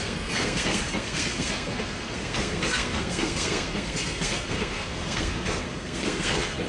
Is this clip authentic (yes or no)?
no